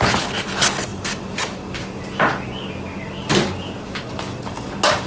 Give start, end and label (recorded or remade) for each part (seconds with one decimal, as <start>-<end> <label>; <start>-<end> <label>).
0.0-5.1 recorded